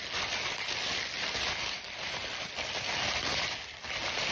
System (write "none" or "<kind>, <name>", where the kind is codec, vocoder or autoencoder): none